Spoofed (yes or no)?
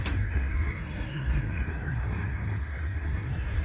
yes